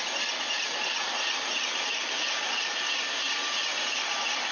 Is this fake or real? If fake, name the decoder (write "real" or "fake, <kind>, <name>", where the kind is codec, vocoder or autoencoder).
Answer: real